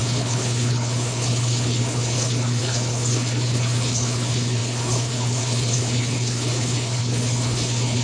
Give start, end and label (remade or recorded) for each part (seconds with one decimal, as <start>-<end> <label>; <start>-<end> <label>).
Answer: 0.0-8.0 remade